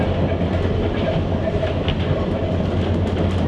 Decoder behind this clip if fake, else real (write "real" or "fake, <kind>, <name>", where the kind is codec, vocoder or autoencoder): real